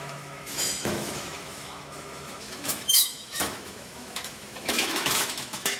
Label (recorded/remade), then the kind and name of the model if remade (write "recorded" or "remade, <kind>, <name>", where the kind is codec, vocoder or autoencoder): remade, autoencoder, DAC-VAE